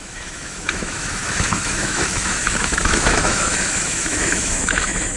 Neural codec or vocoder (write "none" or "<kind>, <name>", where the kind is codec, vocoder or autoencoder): autoencoder, DAC-VAE